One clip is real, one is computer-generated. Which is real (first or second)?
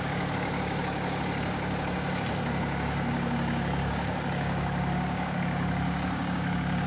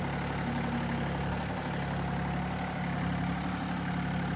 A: second